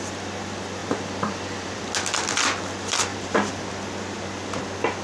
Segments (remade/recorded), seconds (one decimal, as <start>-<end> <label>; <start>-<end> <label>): 0.0-0.8 recorded; 0.8-1.8 remade; 1.8-3.1 recorded; 3.1-3.7 remade; 3.7-5.0 recorded